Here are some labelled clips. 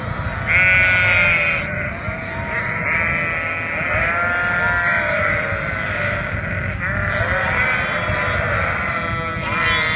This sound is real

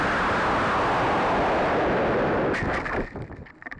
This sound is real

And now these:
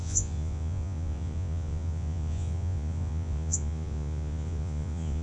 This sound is fake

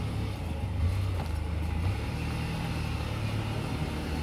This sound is real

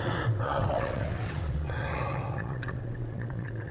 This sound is fake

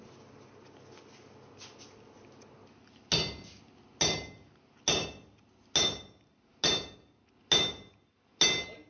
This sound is real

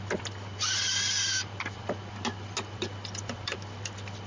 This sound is real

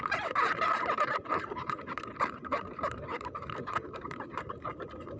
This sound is fake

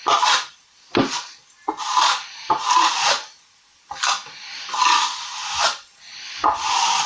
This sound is real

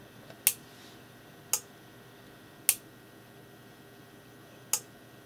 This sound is real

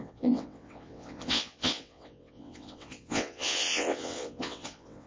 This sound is fake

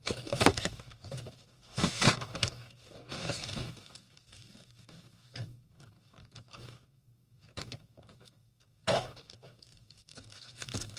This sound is fake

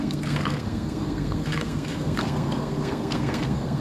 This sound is fake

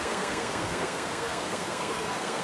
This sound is fake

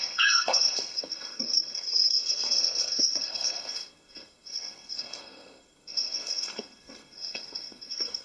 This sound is fake